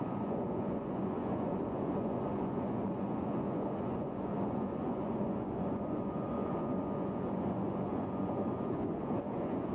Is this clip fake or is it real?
fake